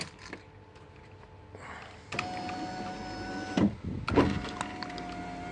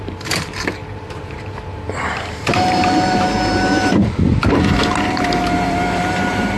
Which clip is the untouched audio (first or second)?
first